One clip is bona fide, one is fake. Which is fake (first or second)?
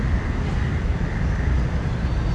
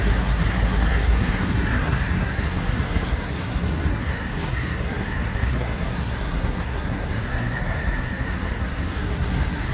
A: second